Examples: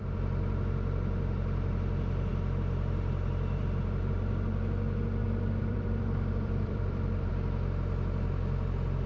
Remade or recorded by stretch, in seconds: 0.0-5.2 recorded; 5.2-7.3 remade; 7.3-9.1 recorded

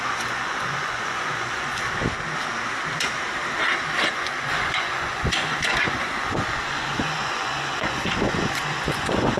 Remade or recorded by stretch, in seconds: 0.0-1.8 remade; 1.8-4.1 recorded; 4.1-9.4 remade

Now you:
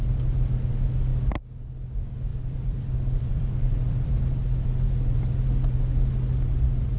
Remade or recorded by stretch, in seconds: 0.0-2.3 recorded; 2.3-4.2 remade; 4.2-7.0 recorded

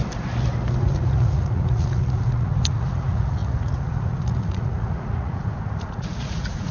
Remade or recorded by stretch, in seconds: 0.0-0.8 recorded; 0.8-6.7 remade

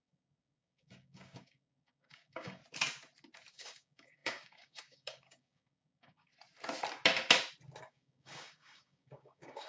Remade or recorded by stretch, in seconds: 0.0-2.6 remade; 2.6-3.5 recorded; 3.5-6.3 remade; 6.3-7.8 recorded; 7.8-9.7 remade